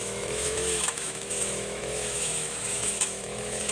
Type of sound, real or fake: fake